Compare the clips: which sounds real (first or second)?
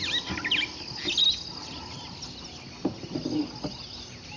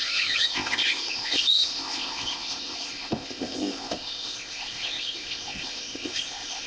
first